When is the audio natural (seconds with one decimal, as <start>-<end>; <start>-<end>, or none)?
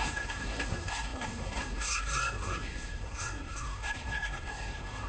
none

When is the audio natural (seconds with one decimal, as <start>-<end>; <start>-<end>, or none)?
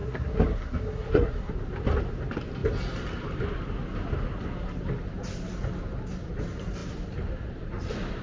1.5-8.2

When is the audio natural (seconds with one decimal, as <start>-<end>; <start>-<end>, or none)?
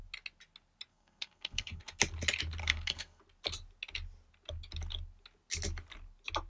0.0-0.9; 2.0-2.6; 3.2-6.5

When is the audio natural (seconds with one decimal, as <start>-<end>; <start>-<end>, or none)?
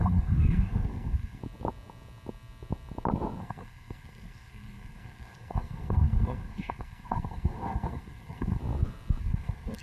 1.4-3.4; 8.6-9.2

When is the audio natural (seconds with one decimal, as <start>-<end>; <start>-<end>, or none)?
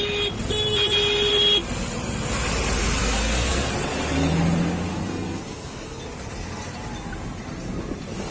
0.0-3.0; 3.7-4.9; 6.0-8.3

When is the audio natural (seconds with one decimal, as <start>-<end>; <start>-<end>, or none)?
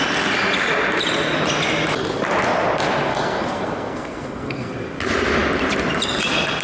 0.0-3.1; 4.7-6.6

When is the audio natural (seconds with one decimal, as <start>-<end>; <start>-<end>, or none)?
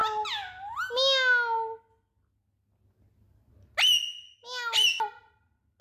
0.0-5.8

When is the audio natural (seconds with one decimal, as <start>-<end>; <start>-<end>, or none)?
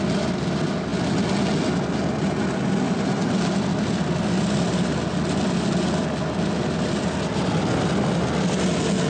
0.0-9.1